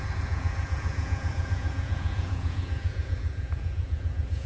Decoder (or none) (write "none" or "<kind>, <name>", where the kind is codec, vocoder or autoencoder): vocoder, Vocos